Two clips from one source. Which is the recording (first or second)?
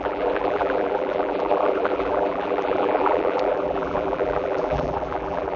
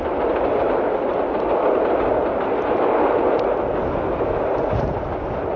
second